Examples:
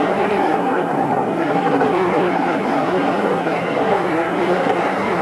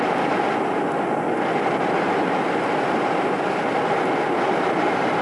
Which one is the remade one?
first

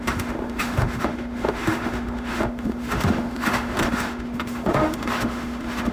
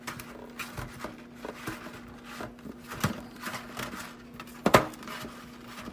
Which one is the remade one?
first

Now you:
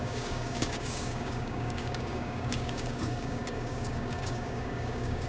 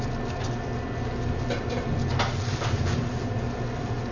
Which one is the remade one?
first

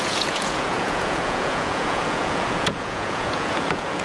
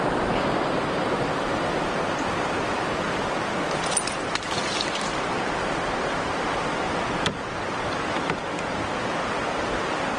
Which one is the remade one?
first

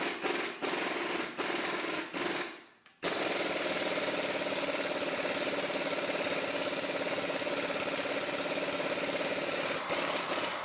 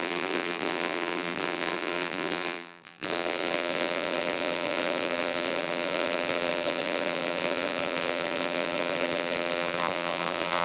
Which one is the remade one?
second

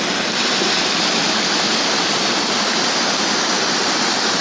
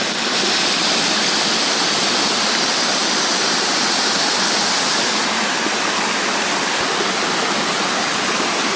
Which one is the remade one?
second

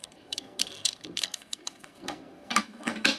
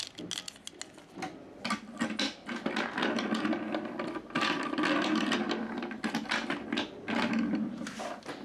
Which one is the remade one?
first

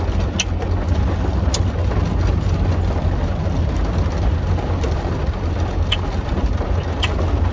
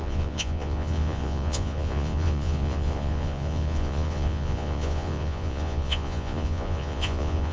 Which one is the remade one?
second